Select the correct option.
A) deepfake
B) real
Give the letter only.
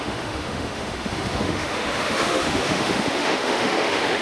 A